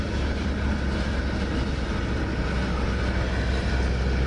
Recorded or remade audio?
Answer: recorded